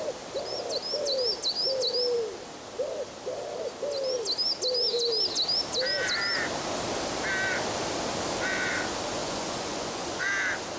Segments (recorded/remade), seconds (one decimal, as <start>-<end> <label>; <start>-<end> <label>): 0.0-9.2 recorded; 9.2-10.3 remade; 10.3-10.8 recorded